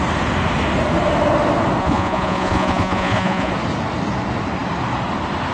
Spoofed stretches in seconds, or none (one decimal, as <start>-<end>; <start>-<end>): 1.8-3.5